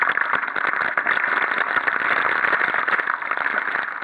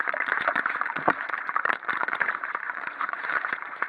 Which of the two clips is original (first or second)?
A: first